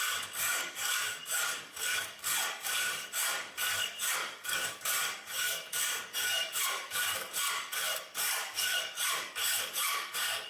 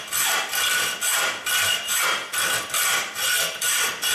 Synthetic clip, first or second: first